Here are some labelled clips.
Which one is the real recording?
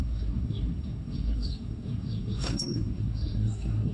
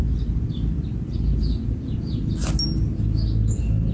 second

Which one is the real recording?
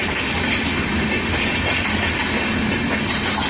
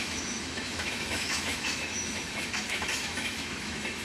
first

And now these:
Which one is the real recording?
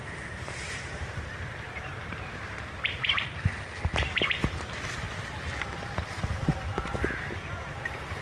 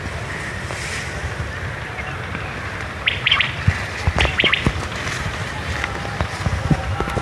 second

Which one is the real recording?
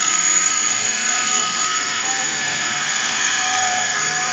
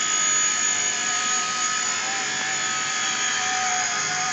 second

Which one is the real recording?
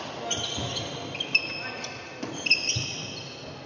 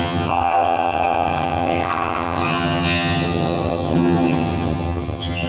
first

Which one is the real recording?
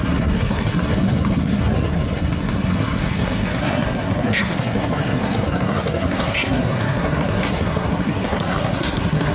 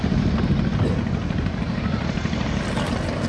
second